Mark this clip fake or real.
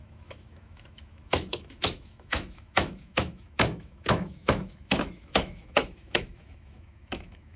fake